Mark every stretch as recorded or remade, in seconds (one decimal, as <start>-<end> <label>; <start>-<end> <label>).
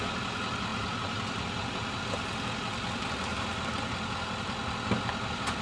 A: 0.0-5.6 recorded